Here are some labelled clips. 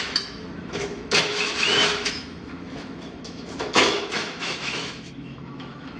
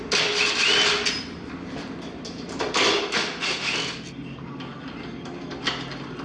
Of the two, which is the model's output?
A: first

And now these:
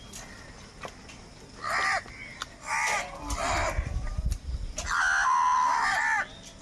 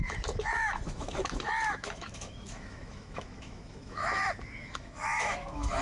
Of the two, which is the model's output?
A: second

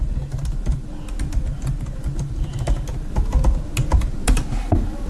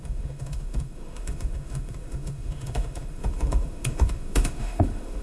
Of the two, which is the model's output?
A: second